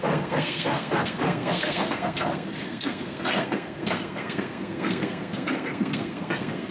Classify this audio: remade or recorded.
remade